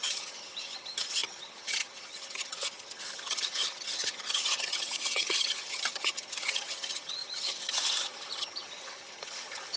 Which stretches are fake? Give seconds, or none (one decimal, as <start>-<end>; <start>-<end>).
0.0-9.8